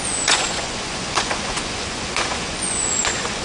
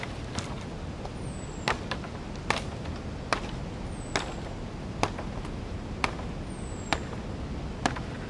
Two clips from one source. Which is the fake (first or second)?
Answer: first